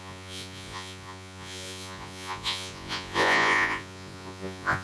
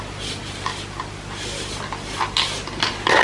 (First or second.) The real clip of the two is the second